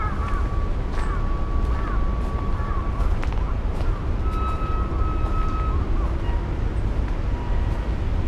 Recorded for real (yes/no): yes